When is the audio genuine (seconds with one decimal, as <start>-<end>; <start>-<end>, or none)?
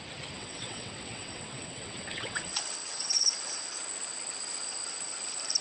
0.0-0.4; 3.7-5.6